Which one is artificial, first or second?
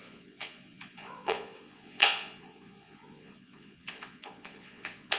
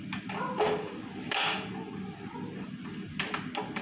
first